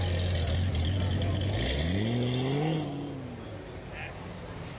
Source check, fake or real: real